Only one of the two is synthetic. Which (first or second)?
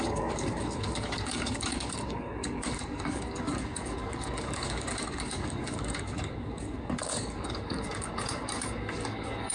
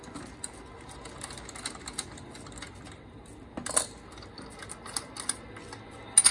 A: first